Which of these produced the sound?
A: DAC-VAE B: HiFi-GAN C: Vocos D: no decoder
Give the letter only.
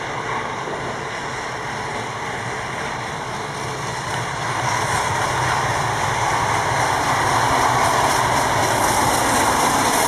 D